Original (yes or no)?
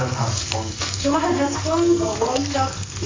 no